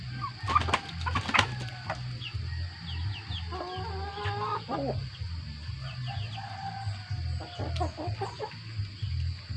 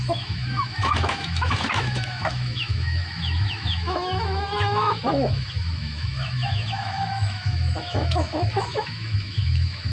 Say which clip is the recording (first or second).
first